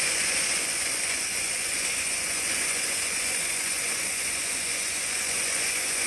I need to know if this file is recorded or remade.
remade